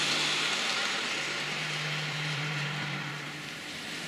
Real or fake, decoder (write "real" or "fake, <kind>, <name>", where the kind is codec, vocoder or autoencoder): fake, vocoder, BigVGAN v2